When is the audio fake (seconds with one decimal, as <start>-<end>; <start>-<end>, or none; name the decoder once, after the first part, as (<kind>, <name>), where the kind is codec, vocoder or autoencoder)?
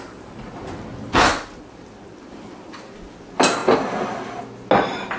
none